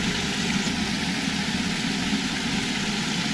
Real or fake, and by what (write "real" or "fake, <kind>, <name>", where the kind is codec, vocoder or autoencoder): real